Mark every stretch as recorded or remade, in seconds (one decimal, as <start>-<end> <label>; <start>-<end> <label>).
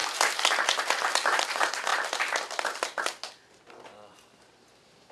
0.0-1.9 remade; 1.9-5.1 recorded